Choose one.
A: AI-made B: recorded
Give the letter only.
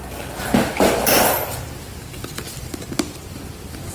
B